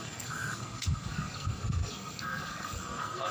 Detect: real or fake fake